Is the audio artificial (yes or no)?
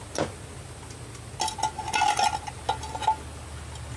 no